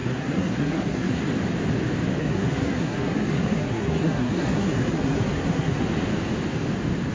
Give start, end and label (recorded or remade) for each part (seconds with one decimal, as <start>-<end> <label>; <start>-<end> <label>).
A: 0.0-1.3 remade; 1.3-2.2 recorded; 2.2-5.8 remade; 5.8-7.1 recorded